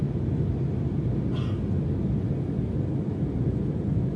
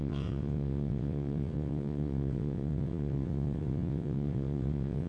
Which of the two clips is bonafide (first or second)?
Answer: first